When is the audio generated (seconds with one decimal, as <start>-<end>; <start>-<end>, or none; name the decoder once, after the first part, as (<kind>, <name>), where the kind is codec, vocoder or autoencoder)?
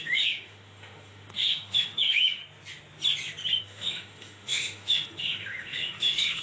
0.0-2.4 (autoencoder, DAC-VAE); 3.6-6.4